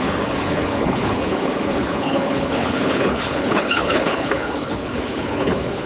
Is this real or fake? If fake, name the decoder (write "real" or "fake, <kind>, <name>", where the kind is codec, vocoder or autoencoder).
fake, codec, HILCodec